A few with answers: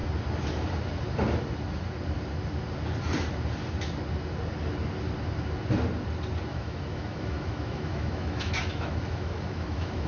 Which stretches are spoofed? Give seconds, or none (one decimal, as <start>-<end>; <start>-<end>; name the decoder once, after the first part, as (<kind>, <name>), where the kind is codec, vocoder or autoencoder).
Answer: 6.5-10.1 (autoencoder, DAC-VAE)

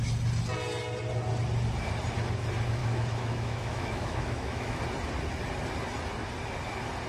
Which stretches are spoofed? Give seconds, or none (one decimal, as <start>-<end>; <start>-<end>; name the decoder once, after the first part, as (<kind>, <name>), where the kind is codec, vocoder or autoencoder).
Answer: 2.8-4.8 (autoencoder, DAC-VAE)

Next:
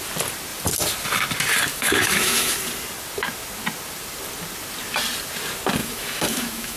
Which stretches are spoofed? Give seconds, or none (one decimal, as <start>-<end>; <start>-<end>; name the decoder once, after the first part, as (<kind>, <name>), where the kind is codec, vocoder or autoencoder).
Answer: 1.7-2.5 (autoencoder, DAC-VAE); 5.8-6.8

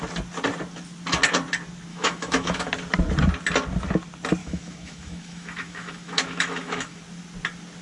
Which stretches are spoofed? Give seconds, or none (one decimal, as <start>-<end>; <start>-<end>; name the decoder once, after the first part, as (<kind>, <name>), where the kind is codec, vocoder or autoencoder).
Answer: 1.9-2.7 (autoencoder, DAC-VAE); 4.4-7.0

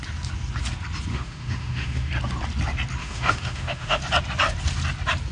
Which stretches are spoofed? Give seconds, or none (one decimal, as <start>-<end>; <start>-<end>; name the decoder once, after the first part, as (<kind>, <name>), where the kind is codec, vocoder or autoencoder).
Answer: 1.1-2.1 (autoencoder, DAC-VAE); 3.0-4.0

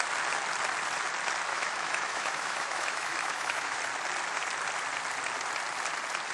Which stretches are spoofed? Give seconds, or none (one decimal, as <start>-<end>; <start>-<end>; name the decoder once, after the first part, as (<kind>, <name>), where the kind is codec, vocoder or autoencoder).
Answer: 1.5-3.8 (autoencoder, DAC-VAE)